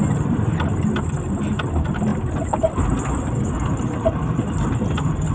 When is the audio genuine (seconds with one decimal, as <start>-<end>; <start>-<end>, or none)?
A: 0.0-5.3